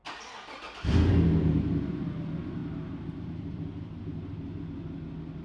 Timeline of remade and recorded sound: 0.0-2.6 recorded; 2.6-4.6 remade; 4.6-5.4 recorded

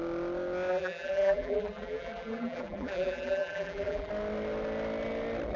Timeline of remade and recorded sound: 0.0-0.7 recorded; 0.7-4.1 remade; 4.1-5.6 recorded

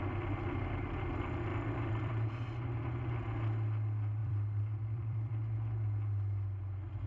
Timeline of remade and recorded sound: 0.0-1.5 recorded; 1.5-2.8 remade; 2.8-4.2 recorded; 4.2-5.3 remade; 5.3-7.1 recorded

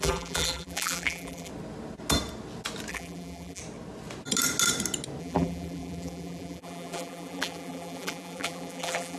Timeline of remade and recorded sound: 0.0-1.5 remade; 1.5-2.9 recorded; 2.9-3.6 remade; 3.6-5.2 recorded; 5.2-9.2 remade

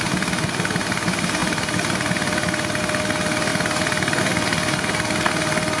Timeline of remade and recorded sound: 0.0-1.4 recorded; 1.4-2.8 remade; 2.8-5.8 recorded